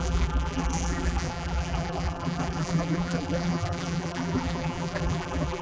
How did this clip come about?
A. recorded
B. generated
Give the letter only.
B